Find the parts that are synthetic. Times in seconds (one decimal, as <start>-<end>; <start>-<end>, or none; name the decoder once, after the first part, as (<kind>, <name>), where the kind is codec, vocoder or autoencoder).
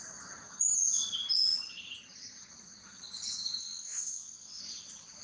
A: 3.6-4.6 (vocoder, WaveNeXt)